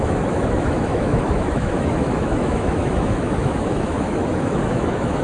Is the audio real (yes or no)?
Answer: no